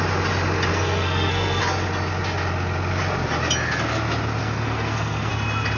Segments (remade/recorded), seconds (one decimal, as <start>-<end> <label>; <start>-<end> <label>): 0.0-0.7 recorded; 0.7-1.6 remade; 1.6-4.4 recorded; 4.4-5.3 remade; 5.3-5.8 recorded